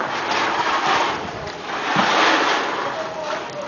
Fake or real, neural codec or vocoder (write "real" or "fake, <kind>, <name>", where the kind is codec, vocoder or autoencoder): real